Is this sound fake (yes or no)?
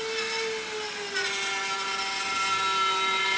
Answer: no